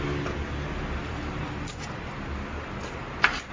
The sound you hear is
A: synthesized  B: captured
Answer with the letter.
B